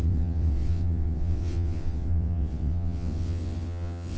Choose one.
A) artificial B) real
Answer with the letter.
A